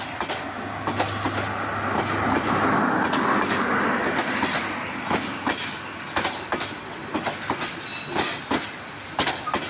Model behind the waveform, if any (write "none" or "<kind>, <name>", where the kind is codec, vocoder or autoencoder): none